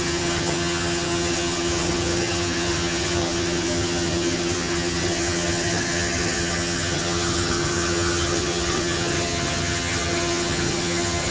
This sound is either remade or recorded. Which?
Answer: remade